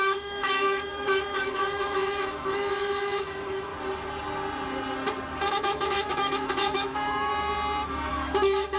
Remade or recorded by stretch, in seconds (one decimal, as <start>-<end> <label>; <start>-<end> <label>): 0.0-3.7 remade; 3.7-5.5 recorded; 5.5-7.3 remade; 7.3-8.1 recorded; 8.1-8.8 remade